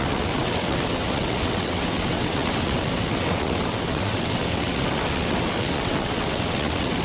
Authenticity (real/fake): fake